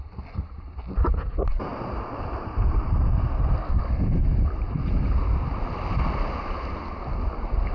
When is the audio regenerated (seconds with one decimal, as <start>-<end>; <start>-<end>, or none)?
none

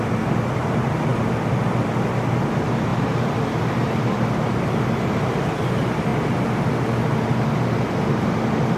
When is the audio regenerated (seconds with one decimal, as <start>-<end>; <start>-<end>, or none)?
none

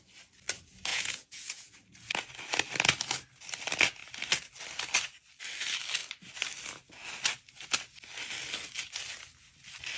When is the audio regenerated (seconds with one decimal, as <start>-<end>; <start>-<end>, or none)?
0.9-1.7

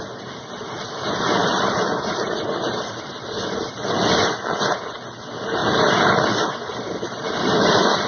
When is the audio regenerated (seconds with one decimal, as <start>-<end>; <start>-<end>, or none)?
1.4-3.6; 5.6-8.1